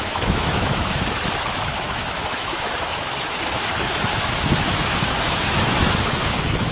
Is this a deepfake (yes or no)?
yes